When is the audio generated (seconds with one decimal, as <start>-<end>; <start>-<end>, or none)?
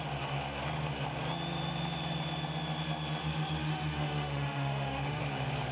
3.2-5.2